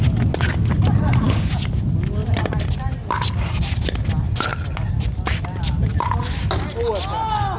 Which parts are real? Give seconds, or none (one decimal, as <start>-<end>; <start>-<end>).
0.0-2.2; 2.8-4.5; 6.6-7.6